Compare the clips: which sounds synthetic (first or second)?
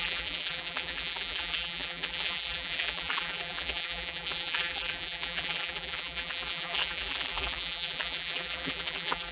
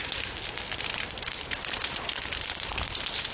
first